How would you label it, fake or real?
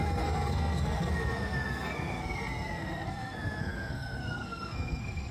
fake